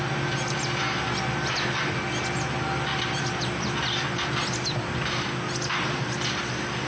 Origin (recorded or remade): recorded